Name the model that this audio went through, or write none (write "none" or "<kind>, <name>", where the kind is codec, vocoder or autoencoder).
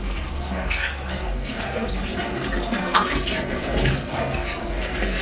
codec, SNAC